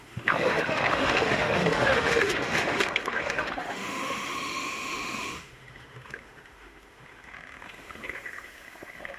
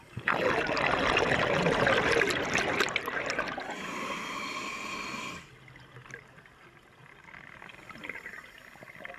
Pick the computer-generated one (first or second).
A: first